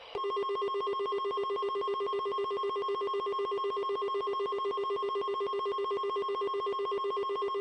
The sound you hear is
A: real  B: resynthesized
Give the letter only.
A